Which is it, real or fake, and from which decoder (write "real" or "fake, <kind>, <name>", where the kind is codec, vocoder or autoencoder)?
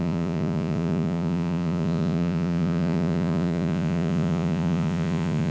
fake, vocoder, Vocos